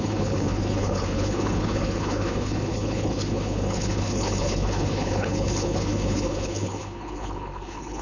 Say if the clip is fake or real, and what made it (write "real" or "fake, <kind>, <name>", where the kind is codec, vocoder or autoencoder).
fake, codec, HILCodec